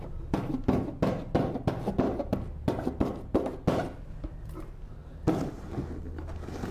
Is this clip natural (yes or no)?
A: yes